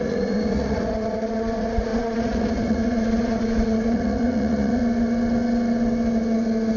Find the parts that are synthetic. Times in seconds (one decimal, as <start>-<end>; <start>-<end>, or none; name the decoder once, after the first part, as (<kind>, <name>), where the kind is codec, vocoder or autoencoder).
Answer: 0.0-4.8 (vocoder, Vocos)